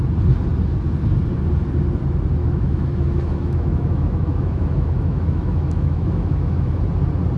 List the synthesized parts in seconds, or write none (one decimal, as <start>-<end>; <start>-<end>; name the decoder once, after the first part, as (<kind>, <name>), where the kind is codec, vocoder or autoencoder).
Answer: 2.4-6.8 (autoencoder, DAC-VAE)